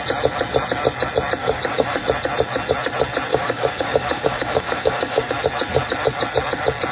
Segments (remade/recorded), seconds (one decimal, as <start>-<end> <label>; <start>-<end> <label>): 0.0-1.4 recorded; 1.4-2.0 remade; 2.0-3.3 recorded; 3.3-5.3 remade; 5.3-6.9 recorded